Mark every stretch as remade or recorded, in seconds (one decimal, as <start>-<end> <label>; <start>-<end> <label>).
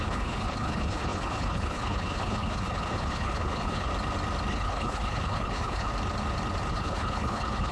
0.0-3.9 remade; 3.9-4.5 recorded; 4.5-5.9 remade; 5.9-6.7 recorded; 6.7-7.7 remade